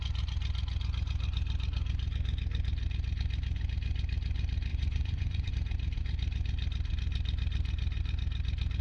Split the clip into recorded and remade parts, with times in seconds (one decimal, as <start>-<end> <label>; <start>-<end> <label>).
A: 0.0-4.7 recorded; 4.7-5.5 remade; 5.5-8.8 recorded